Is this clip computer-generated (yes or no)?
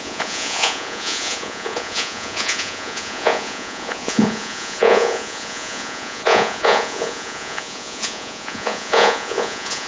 yes